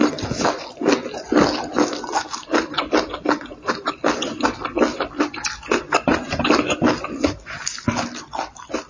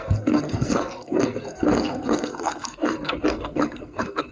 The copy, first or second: second